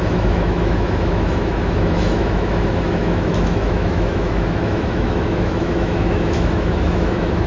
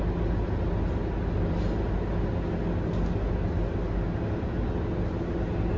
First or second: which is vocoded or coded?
first